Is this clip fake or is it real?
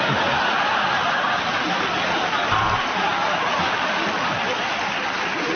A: real